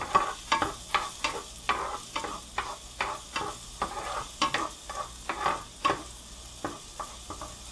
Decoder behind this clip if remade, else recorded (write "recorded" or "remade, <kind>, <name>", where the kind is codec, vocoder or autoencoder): recorded